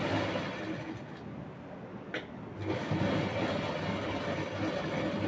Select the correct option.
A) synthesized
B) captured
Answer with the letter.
B